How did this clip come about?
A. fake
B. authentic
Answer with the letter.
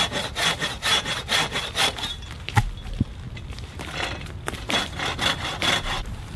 B